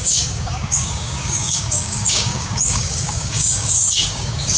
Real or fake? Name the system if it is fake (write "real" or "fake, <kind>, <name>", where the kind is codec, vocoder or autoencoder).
fake, codec, DAC